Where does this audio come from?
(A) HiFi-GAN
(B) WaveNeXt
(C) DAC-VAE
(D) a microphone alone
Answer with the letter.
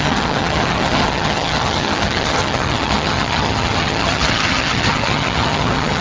A